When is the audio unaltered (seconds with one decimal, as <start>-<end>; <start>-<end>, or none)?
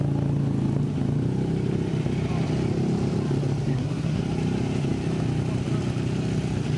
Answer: 0.0-3.6; 4.2-6.8